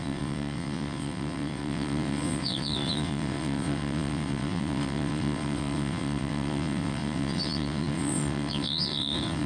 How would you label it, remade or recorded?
remade